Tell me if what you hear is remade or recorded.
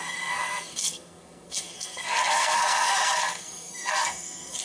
remade